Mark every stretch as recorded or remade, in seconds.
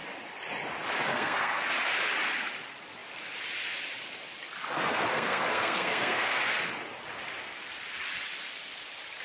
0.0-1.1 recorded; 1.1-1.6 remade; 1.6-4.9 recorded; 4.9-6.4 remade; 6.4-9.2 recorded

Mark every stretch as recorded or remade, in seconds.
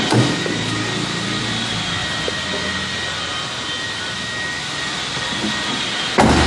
0.0-6.5 recorded